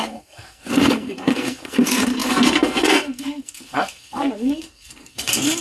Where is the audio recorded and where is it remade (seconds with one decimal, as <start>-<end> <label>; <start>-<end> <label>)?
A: 0.0-5.6 remade